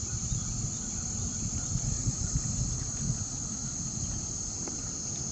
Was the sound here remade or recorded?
recorded